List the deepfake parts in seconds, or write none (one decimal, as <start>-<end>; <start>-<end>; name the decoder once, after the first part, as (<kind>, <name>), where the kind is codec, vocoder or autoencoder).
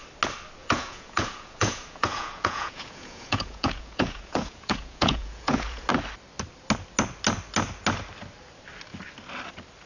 0.6-5.9 (vocoder, Vocos)